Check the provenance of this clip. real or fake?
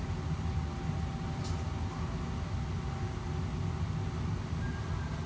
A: real